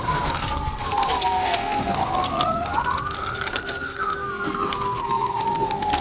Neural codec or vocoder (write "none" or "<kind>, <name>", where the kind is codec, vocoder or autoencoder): codec, SNAC